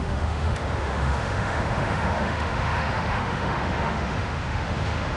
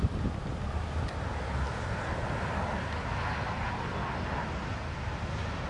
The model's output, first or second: first